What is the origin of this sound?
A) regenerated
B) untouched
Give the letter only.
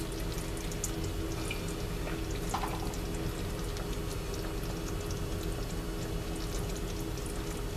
B